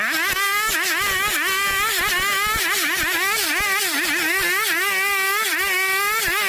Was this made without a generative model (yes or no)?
yes